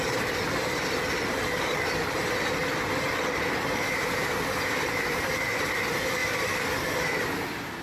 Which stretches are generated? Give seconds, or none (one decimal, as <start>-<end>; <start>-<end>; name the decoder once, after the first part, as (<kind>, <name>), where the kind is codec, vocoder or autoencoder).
none